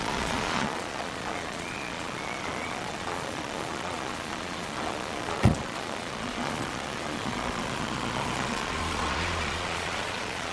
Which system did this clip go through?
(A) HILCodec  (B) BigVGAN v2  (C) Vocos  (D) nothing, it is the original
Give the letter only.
C